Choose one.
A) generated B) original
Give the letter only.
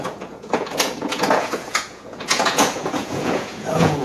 A